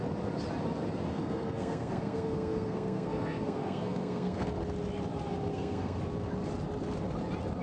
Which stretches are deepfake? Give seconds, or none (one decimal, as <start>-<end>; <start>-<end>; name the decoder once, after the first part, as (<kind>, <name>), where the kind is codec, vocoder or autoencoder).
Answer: 1.1-4.5 (codec, SNAC); 5.5-6.0